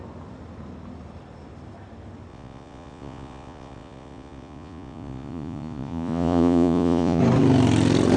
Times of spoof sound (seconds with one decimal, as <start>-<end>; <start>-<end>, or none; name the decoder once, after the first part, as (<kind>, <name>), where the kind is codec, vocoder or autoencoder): 2.3-7.2 (vocoder, Vocos)